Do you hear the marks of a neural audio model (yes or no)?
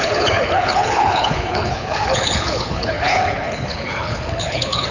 yes